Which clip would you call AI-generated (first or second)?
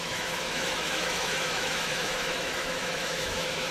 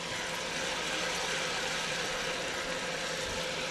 first